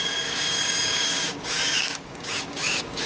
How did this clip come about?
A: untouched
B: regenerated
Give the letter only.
B